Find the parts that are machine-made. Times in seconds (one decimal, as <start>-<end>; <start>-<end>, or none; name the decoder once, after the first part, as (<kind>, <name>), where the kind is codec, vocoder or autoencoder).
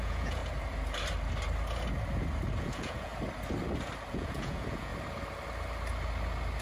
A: 0.0-0.4 (vocoder, Vocos); 2.6-3.1; 4.1-4.9